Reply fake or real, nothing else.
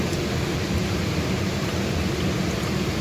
real